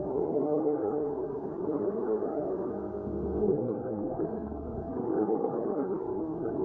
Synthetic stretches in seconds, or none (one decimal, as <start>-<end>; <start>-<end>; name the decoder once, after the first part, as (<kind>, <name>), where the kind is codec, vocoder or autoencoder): 0.0-2.7 (codec, SNAC); 3.4-6.6